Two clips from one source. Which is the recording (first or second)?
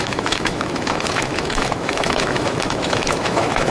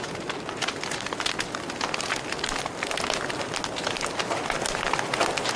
second